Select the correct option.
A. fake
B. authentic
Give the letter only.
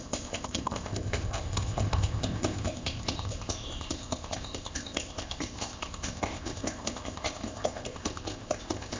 A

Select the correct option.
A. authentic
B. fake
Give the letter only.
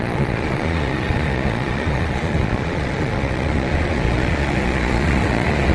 B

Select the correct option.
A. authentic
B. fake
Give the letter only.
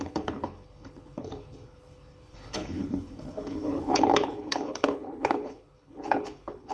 B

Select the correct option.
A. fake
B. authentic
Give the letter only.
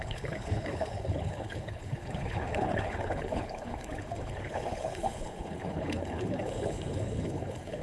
A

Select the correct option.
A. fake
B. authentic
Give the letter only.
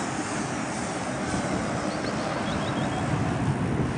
B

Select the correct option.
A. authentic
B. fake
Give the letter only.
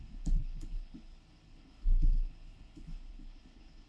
B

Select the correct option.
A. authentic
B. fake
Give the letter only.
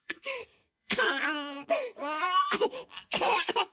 B